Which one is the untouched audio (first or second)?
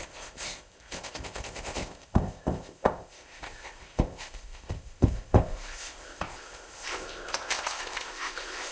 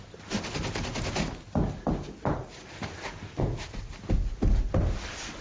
second